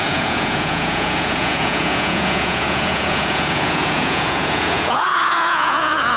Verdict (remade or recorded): remade